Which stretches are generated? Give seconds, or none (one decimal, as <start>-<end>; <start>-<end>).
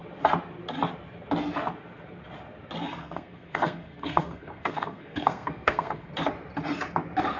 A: 3.0-6.1